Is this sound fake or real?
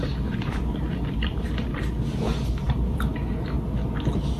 real